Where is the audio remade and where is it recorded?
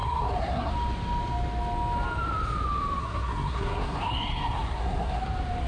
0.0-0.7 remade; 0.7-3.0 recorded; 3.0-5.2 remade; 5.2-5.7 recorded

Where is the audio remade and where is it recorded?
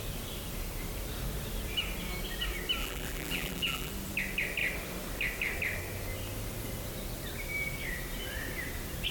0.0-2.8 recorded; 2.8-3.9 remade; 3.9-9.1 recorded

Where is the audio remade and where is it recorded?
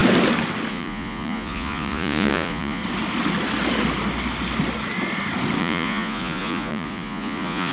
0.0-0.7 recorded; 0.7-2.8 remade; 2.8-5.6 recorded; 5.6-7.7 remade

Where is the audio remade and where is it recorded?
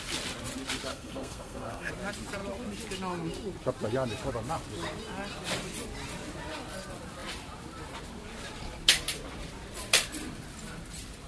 0.0-0.9 recorded; 0.9-1.9 remade; 1.9-11.3 recorded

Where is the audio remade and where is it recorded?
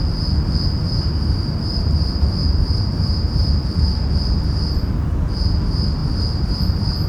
0.0-0.8 recorded; 0.8-4.0 remade; 4.0-6.0 recorded; 6.0-7.1 remade